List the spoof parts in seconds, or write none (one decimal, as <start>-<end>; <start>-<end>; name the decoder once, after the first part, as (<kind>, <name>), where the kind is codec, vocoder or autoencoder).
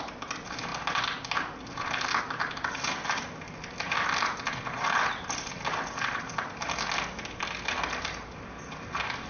none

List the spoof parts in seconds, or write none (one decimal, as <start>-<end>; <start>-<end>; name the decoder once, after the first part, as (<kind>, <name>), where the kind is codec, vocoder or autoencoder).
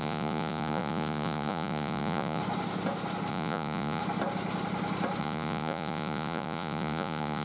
0.0-2.4 (vocoder, Vocos); 3.3-4.0; 5.2-7.4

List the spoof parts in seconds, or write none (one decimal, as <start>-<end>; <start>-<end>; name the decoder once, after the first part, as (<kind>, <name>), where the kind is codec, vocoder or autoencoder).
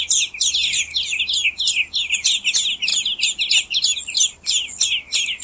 none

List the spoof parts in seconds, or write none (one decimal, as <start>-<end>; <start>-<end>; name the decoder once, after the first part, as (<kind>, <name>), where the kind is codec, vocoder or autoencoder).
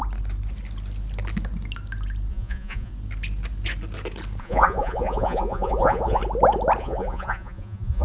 2.3-2.9 (vocoder, Vocos); 4.4-6.2; 6.8-8.0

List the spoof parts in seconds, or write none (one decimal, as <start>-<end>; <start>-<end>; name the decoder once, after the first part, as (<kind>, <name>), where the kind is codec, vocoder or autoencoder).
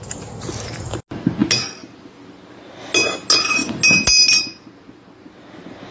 none